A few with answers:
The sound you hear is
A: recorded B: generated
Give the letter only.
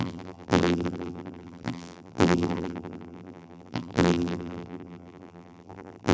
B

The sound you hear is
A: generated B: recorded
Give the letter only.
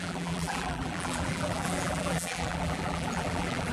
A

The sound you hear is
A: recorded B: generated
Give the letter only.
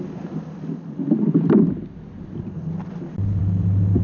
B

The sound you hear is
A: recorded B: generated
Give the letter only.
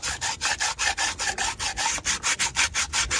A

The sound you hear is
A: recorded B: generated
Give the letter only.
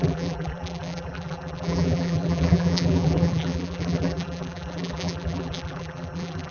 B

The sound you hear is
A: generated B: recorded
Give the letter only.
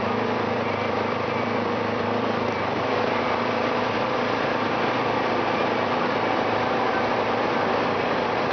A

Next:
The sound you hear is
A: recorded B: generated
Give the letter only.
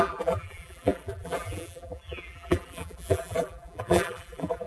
B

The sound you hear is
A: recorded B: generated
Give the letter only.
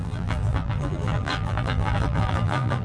B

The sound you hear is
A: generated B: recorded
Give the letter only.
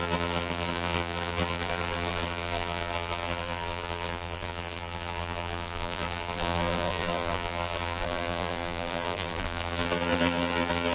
A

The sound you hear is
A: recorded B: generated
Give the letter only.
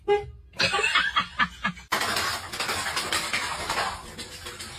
A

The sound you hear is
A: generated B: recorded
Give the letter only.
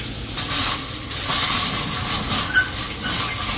B